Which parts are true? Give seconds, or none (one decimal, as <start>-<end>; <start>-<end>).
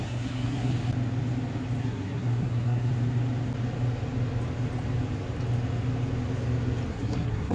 0.7-1.8; 2.9-6.9